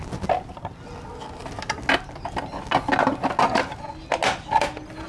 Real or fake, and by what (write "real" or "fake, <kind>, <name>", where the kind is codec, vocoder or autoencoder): real